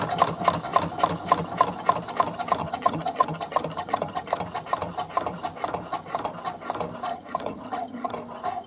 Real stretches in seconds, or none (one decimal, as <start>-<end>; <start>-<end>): 0.0-2.6; 4.4-7.1; 8.1-8.7